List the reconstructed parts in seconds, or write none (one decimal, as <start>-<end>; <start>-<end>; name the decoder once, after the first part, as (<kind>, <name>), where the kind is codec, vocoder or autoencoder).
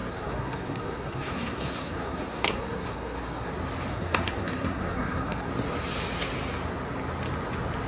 0.0-3.5 (codec, SNAC); 3.9-5.5